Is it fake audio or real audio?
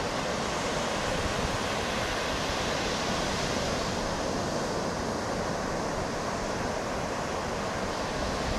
real